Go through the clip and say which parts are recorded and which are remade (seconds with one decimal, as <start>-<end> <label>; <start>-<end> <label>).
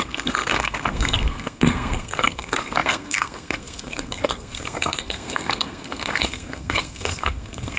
0.0-7.8 remade